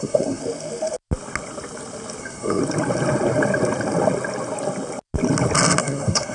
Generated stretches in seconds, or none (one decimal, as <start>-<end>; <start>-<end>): 0.0-0.4; 2.2-2.6; 5.8-6.3